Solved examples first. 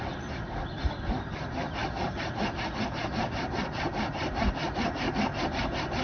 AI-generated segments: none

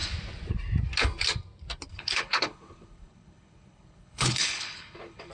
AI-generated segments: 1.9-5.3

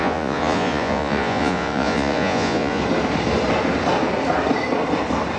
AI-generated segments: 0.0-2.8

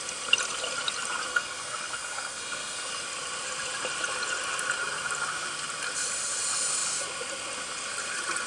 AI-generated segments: 1.3-2.9

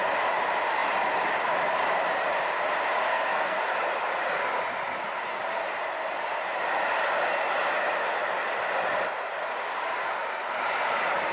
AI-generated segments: 3.1-3.6

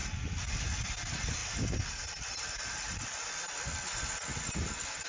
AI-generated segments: none

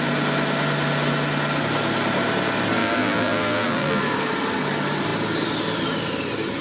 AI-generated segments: 2.8-4.0